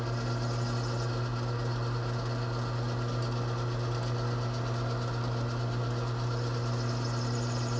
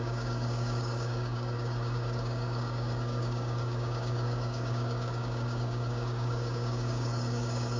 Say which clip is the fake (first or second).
second